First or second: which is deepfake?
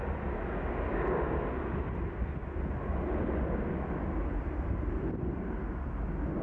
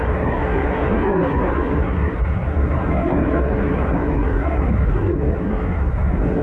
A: second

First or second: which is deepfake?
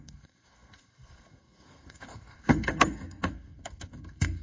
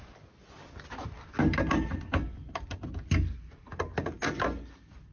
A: first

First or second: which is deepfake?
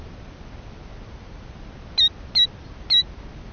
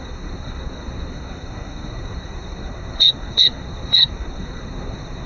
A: second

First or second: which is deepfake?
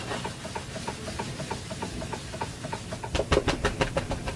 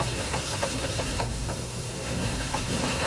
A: second